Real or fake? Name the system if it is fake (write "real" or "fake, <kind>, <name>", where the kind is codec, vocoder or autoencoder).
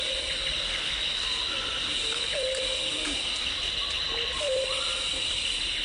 real